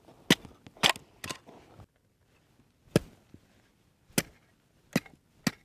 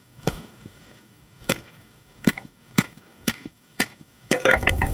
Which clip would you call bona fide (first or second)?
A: first